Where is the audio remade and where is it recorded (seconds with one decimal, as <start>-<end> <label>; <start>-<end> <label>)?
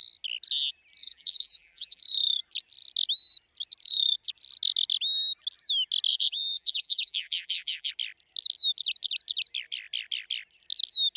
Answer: 0.0-1.0 recorded; 1.0-2.0 remade; 2.0-6.1 recorded; 6.1-7.9 remade; 7.9-11.2 recorded